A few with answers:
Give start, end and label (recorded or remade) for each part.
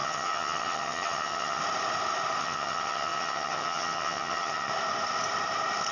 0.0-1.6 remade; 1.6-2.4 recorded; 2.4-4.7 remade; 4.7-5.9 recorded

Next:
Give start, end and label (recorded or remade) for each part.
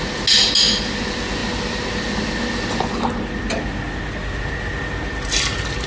0.0-5.9 recorded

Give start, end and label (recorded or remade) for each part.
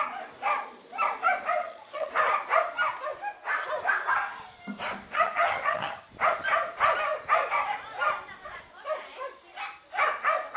0.0-1.6 recorded; 1.6-2.1 remade; 2.1-5.1 recorded; 5.1-6.1 remade; 6.1-10.6 recorded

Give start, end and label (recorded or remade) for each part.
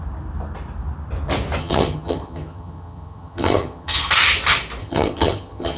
0.0-1.6 recorded; 1.6-4.1 remade; 4.1-4.8 recorded; 4.8-5.8 remade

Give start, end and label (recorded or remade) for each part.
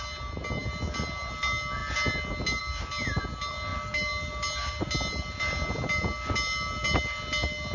0.0-7.7 recorded